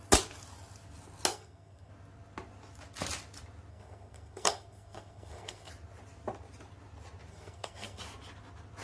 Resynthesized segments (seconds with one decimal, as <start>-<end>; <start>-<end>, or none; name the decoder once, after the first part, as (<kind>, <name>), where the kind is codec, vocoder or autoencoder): 1.3-1.9 (codec, SNAC); 3.7-5.7; 7.3-8.0